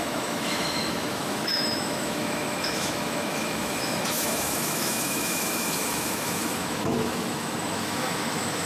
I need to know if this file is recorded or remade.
remade